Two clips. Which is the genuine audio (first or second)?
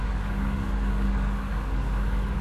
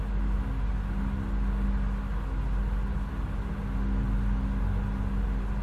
second